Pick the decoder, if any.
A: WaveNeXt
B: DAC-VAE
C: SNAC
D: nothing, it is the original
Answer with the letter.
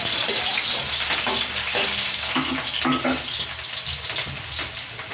D